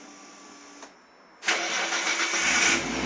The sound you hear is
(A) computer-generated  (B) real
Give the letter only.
B